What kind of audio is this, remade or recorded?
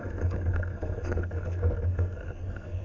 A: remade